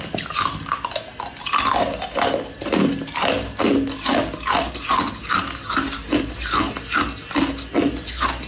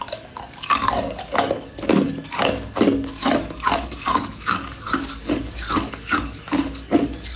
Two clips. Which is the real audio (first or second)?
first